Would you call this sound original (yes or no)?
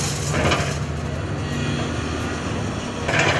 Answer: yes